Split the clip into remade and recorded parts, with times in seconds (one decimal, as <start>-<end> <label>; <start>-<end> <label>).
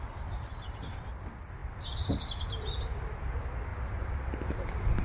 0.0-5.0 recorded